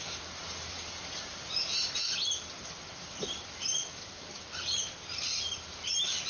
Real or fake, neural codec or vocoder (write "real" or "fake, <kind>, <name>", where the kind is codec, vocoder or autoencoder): fake, vocoder, BigVGAN v2